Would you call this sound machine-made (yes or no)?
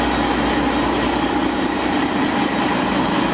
no